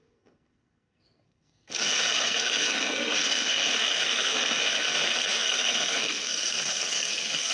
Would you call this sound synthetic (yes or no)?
yes